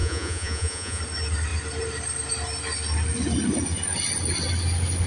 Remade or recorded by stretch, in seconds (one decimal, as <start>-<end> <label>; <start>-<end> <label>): 0.0-1.0 remade; 1.0-5.1 recorded